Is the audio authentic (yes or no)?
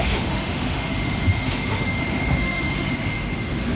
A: no